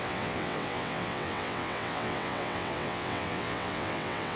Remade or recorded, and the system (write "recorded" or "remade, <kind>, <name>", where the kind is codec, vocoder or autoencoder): remade, vocoder, WaveNeXt